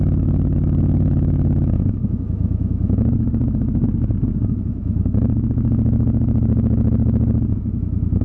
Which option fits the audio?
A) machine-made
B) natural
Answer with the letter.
A